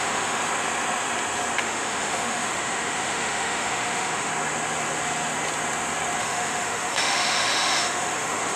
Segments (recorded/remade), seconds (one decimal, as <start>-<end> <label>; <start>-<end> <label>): 0.0-0.4 remade; 0.4-1.6 recorded; 1.6-4.3 remade; 4.3-6.2 recorded; 6.2-8.6 remade